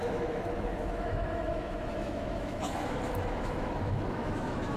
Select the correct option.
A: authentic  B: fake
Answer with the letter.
B